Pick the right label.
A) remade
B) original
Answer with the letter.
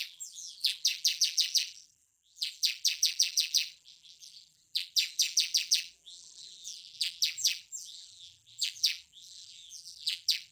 A